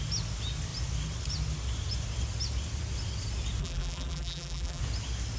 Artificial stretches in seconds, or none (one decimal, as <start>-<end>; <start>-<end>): 3.6-4.8